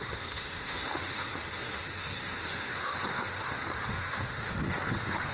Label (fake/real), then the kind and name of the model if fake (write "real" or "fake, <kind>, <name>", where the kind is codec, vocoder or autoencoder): fake, autoencoder, DAC-VAE